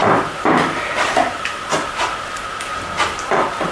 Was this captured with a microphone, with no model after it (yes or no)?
yes